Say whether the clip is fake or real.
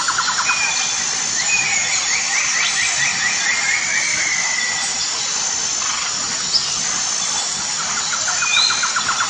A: real